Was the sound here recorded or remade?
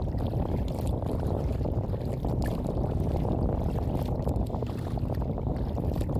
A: recorded